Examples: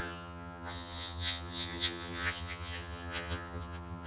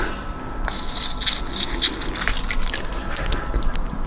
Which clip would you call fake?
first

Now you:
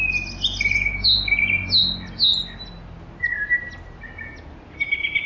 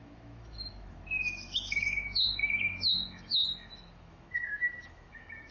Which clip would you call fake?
second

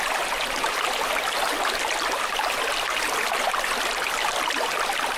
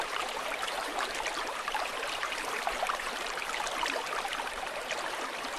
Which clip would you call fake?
second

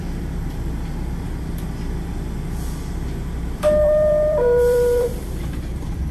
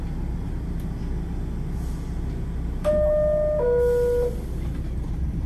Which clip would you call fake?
first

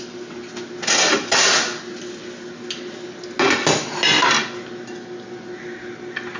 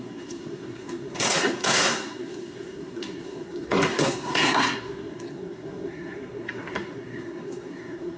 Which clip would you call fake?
second